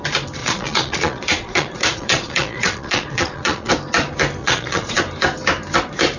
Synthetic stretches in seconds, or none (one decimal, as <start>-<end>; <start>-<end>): 0.4-3.7; 4.4-5.0